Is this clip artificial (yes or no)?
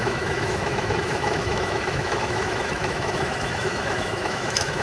yes